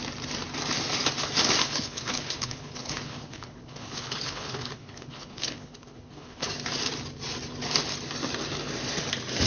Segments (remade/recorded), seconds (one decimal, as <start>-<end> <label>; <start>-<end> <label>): 0.0-1.6 recorded; 1.6-6.5 remade; 6.5-9.5 recorded